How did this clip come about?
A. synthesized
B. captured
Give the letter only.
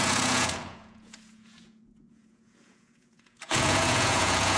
A